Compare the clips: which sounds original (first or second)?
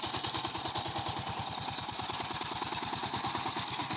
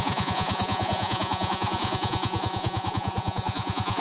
first